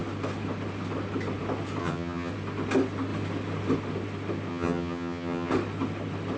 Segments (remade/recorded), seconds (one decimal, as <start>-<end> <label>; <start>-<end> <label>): 0.0-1.8 recorded; 1.8-2.3 remade; 2.3-4.5 recorded; 4.5-5.5 remade; 5.5-6.4 recorded